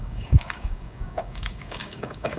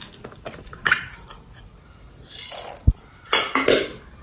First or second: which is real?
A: second